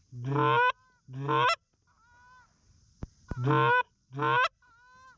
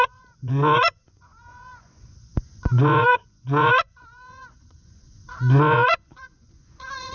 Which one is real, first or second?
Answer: first